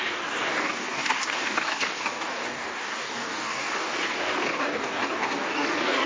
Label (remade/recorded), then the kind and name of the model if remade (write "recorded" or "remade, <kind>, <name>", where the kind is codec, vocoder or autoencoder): remade, codec, DAC